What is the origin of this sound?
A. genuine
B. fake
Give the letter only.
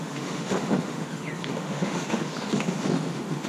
B